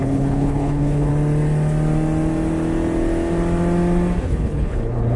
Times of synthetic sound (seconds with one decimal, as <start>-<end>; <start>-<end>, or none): 0.0-1.1; 4.2-5.2